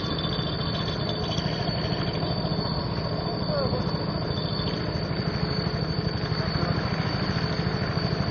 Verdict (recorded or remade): recorded